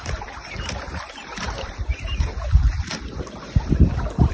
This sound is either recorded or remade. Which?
remade